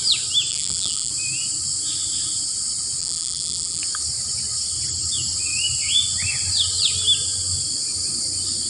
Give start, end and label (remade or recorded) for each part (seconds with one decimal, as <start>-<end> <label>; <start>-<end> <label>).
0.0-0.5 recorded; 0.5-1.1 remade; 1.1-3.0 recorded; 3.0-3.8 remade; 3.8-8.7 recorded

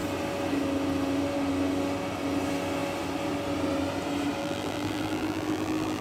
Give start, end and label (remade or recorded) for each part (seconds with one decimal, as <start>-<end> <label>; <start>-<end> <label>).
0.0-4.4 recorded; 4.4-6.0 remade

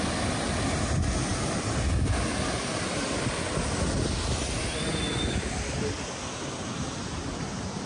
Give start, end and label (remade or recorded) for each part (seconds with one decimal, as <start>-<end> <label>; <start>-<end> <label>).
0.0-7.9 recorded

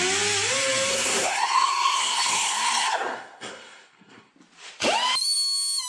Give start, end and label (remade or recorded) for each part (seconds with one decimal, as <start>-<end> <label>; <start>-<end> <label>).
0.0-0.9 recorded; 0.9-4.3 remade; 4.3-5.9 recorded